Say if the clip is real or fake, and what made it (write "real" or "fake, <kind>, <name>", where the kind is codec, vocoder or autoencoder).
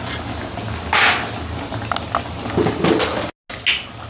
real